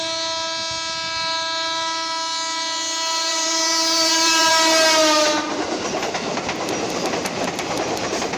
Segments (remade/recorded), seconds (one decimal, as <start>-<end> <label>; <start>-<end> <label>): 0.0-3.3 recorded; 3.3-4.5 remade; 4.5-7.2 recorded; 7.2-7.8 remade; 7.8-8.4 recorded